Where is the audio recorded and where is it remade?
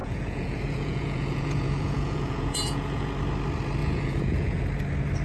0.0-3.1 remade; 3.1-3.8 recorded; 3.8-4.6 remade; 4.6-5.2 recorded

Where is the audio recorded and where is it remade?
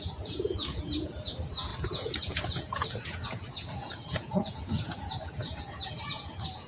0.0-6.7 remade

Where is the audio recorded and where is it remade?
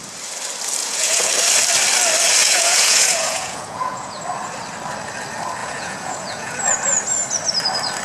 0.0-0.8 recorded; 0.8-1.3 remade; 1.3-2.4 recorded; 2.4-4.2 remade; 4.2-5.6 recorded; 5.6-6.6 remade; 6.6-8.0 recorded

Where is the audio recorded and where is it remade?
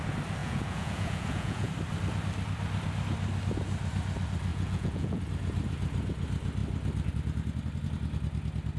0.0-0.4 recorded; 0.4-1.7 remade; 1.7-4.5 recorded; 4.5-5.2 remade; 5.2-8.8 recorded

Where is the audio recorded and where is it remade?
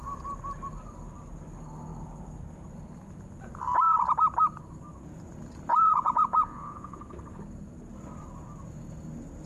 0.0-5.7 recorded; 5.7-7.0 remade; 7.0-9.5 recorded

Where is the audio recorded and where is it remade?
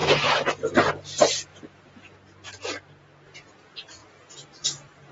0.0-5.1 recorded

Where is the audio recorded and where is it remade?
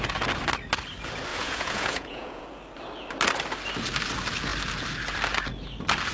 0.0-1.3 recorded; 1.3-2.4 remade; 2.4-6.1 recorded